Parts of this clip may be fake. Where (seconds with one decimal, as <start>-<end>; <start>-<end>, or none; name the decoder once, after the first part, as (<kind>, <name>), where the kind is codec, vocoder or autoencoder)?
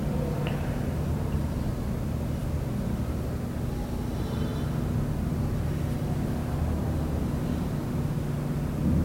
0.0-2.4 (vocoder, BigVGAN v2); 4.1-9.0